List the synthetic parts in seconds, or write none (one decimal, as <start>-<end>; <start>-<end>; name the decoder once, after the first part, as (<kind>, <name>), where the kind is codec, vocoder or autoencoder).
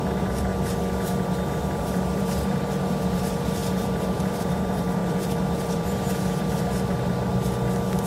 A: 0.0-0.5 (vocoder, BigVGAN v2); 1.6-7.3